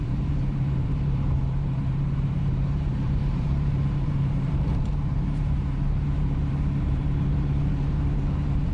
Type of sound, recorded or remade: remade